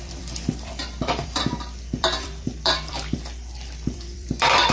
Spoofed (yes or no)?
yes